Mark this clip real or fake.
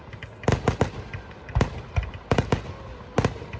real